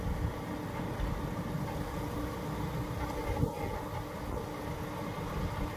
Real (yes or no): yes